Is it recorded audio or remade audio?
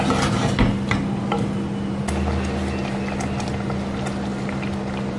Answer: recorded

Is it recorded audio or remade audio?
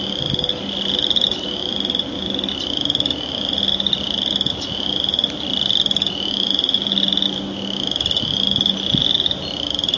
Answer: recorded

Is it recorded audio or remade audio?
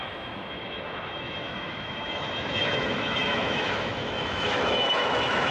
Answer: remade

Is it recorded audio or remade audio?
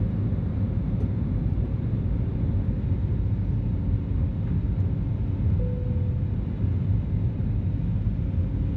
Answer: recorded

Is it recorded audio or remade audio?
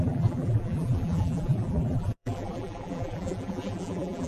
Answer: remade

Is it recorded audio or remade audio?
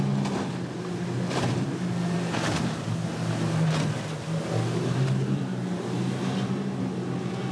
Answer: recorded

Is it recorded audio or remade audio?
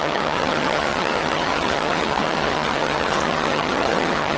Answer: remade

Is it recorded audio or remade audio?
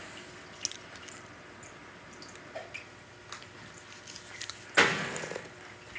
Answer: recorded